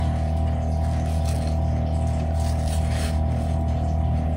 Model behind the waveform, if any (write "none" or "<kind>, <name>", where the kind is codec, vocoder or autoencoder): none